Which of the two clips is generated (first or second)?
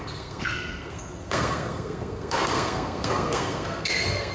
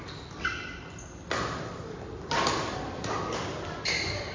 first